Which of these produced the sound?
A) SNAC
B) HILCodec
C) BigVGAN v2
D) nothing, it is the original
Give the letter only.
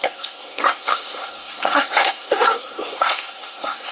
A